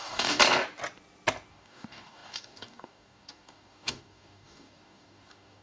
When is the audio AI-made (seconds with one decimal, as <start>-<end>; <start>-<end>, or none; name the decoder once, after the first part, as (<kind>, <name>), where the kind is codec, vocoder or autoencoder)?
0.0-0.4 (codec, DAC); 1.5-5.6

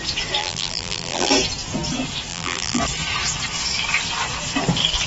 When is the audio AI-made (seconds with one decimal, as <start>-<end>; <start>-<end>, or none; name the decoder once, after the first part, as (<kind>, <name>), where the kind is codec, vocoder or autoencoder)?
0.4-1.3 (vocoder, BigVGAN v2); 2.3-2.8